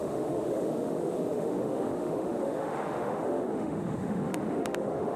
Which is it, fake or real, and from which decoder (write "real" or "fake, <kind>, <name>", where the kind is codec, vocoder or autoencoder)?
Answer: fake, autoencoder, DAC-VAE